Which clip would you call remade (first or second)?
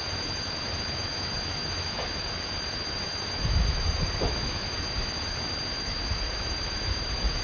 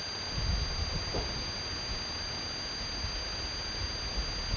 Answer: first